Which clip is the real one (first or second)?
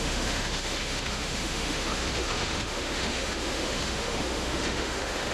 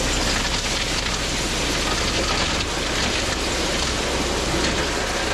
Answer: second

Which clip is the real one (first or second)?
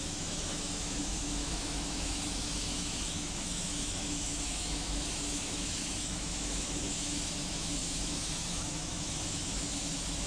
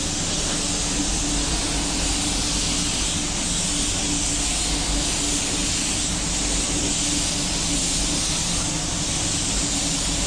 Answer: second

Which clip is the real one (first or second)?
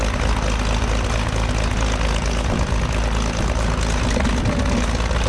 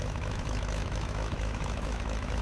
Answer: first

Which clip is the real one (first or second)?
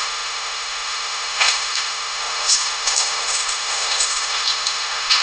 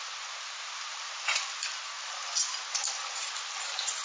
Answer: second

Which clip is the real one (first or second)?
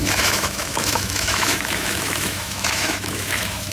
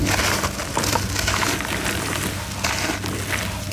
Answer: second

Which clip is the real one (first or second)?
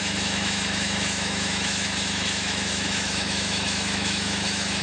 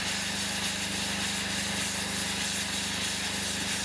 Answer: second